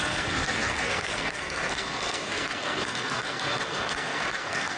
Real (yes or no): no